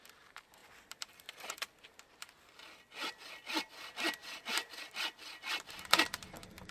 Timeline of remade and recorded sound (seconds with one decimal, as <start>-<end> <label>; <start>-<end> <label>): 0.0-6.7 recorded